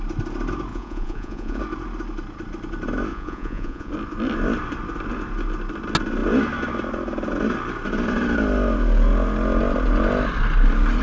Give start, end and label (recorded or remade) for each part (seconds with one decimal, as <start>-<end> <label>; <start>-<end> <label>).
0.0-0.7 recorded; 0.7-1.6 remade; 1.6-3.1 recorded; 3.1-3.9 remade; 3.9-11.0 recorded